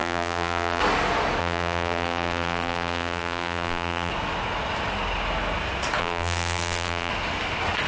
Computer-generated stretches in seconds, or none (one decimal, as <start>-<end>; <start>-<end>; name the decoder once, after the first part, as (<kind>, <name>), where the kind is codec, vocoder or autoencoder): 0.0-0.8 (vocoder, BigVGAN v2); 1.4-4.1; 6.0-7.1